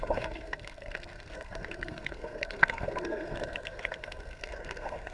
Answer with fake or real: fake